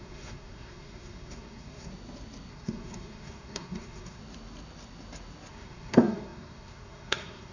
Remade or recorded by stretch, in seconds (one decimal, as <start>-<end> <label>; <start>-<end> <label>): 0.0-1.9 remade; 1.9-2.5 recorded; 2.5-4.2 remade; 4.2-5.5 recorded; 5.5-7.5 remade